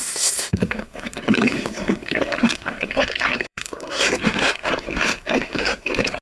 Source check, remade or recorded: remade